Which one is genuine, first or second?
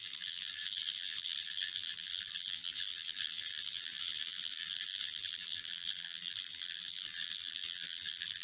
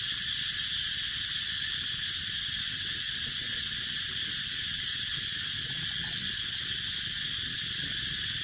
second